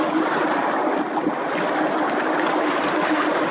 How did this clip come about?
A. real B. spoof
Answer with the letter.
A